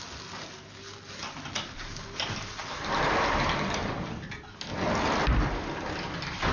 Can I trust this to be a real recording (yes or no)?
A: yes